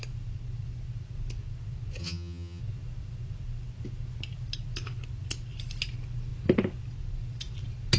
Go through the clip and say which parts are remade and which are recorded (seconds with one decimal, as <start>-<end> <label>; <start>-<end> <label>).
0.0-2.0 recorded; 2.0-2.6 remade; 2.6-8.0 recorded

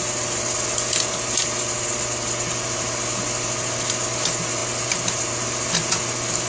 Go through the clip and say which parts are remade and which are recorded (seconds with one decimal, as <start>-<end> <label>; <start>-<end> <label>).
0.0-6.5 recorded

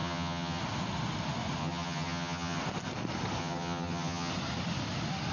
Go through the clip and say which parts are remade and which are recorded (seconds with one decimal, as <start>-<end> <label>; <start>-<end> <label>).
0.0-0.6 remade; 0.6-1.6 recorded; 1.6-2.6 remade; 2.6-3.4 recorded; 3.4-4.3 remade; 4.3-5.3 recorded

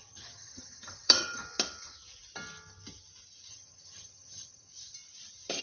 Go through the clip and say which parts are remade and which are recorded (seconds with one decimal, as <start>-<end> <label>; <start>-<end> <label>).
0.0-1.4 remade; 1.4-3.5 recorded; 3.5-4.7 remade; 4.7-5.6 recorded